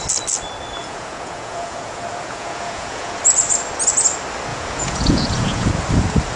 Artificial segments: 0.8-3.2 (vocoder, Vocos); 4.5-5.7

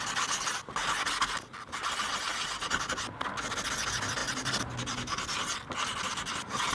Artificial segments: none

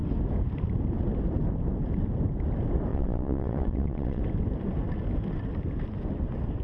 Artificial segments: 2.9-4.2 (vocoder, WaveNeXt)

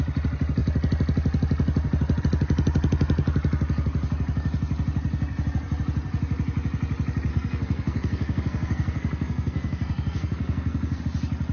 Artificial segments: 7.3-11.0 (codec, SNAC)

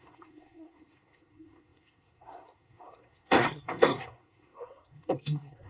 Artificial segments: 0.0-5.7 (codec, SNAC)

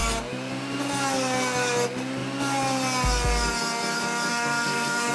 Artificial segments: 4.3-5.1 (codec, SNAC)